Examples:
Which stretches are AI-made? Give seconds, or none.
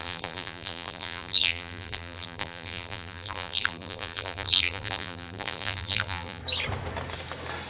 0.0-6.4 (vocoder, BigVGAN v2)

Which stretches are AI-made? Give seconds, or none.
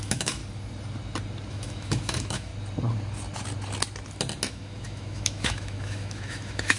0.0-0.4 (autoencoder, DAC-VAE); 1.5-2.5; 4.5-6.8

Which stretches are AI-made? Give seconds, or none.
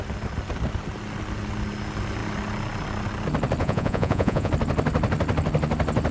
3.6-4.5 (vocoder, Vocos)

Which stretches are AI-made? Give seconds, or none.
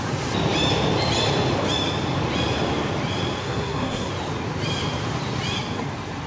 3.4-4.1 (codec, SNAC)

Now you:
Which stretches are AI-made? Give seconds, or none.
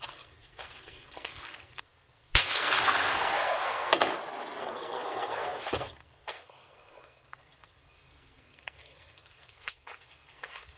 0.0-4.1 (codec, SNAC); 4.6-10.8